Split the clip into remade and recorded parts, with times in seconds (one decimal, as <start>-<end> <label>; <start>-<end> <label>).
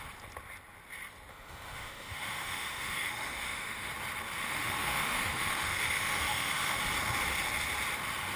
0.0-1.3 recorded; 1.3-3.9 remade; 3.9-4.4 recorded; 4.4-6.8 remade; 6.8-8.4 recorded